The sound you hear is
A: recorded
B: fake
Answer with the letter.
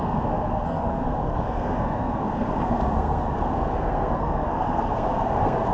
B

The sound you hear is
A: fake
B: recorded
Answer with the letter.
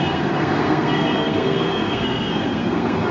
A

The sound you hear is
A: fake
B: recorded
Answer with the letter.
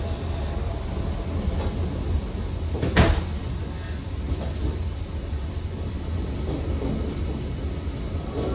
B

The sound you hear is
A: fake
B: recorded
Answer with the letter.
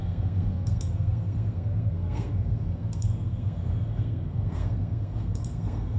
A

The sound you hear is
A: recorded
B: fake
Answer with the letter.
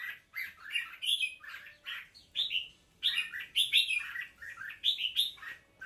A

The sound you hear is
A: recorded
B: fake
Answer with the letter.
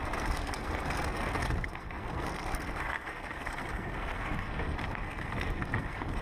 B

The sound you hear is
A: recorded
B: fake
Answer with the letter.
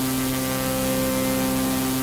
A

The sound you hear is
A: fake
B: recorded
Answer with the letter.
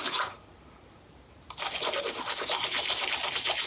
B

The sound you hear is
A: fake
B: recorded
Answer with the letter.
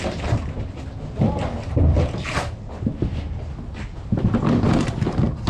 B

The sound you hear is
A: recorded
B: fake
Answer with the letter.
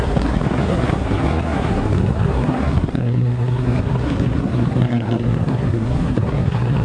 B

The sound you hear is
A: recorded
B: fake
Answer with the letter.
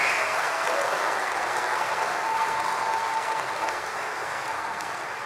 B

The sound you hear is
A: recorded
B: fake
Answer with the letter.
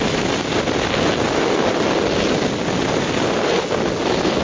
A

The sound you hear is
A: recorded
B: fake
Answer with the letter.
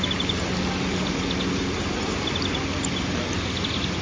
A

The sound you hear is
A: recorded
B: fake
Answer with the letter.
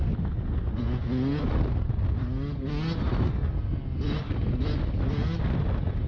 A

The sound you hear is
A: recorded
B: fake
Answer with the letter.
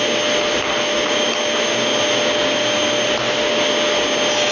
A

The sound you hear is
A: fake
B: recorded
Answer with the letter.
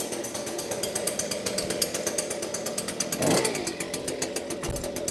B